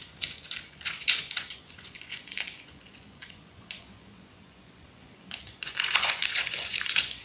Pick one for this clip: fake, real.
fake